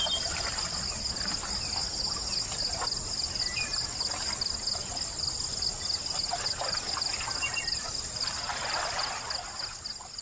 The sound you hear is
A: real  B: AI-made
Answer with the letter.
A